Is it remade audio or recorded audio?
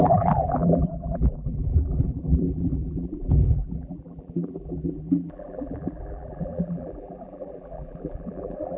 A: remade